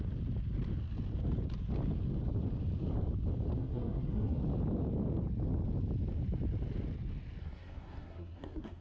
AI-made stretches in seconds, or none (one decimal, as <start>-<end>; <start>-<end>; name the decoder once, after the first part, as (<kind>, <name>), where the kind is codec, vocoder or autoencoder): 3.6-4.4 (codec, SNAC); 7.4-8.8